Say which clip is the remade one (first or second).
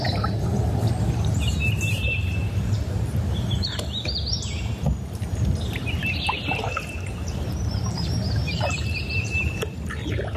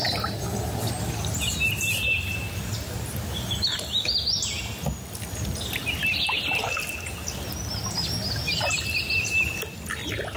first